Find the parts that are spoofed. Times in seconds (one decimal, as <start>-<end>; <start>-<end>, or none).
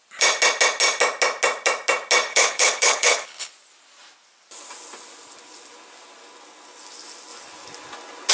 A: 2.3-3.5